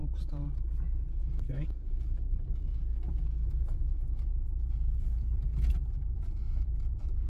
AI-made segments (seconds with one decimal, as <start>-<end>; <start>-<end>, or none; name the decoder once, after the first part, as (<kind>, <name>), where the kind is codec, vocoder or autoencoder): 0.0-7.3 (vocoder, BigVGAN v2)